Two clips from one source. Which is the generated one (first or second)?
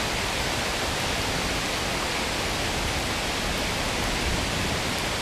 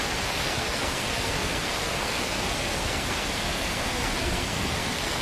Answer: second